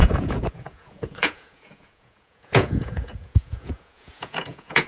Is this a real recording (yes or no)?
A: no